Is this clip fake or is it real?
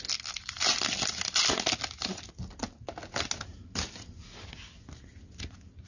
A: real